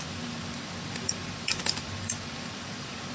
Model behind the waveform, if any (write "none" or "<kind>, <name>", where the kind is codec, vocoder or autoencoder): vocoder, BigVGAN v2